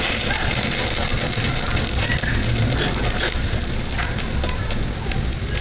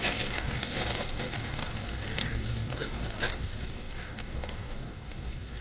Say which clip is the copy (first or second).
second